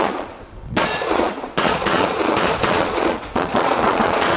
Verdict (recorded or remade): remade